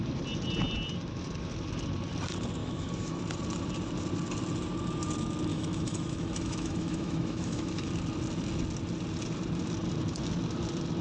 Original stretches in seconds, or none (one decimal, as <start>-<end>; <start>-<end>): 0.0-2.6; 3.2-5.5; 7.9-11.0